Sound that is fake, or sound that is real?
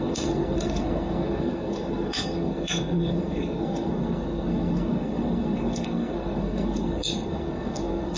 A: fake